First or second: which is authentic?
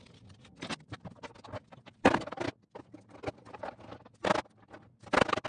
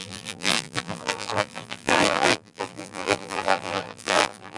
first